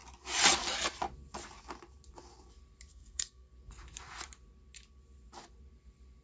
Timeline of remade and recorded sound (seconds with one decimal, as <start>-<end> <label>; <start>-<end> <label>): 0.0-2.9 recorded; 2.9-3.5 remade; 3.5-6.2 recorded